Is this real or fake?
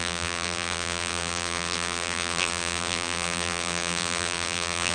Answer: fake